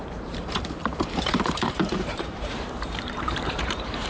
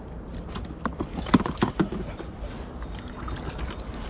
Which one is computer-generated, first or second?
first